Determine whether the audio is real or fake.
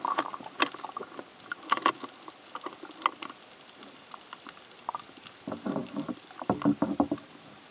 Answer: real